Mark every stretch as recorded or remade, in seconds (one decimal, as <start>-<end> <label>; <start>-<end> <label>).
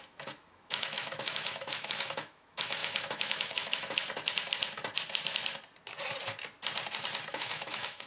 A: 0.0-4.0 remade; 4.0-7.3 recorded; 7.3-8.1 remade